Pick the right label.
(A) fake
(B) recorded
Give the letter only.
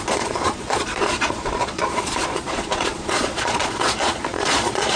A